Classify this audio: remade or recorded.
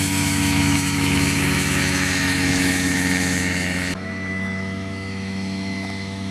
remade